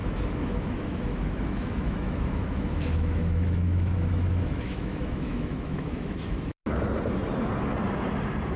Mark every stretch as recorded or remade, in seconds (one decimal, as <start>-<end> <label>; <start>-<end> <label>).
0.0-6.6 remade; 6.6-8.6 recorded